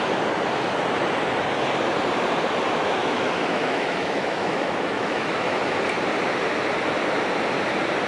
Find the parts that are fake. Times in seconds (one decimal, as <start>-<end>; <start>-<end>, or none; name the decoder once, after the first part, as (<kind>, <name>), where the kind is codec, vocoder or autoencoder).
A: 3.0-5.6 (autoencoder, DAC-VAE)